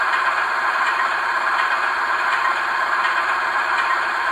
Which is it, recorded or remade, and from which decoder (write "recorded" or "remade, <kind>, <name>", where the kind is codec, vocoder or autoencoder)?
remade, vocoder, BigVGAN v2